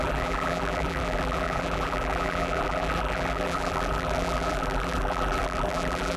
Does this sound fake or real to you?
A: fake